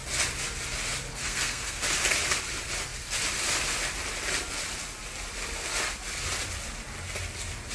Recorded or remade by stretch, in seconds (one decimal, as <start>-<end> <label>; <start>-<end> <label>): 0.0-1.1 recorded; 1.1-1.8 remade; 1.8-7.7 recorded